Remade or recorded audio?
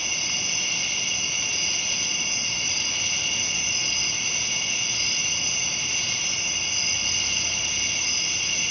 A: recorded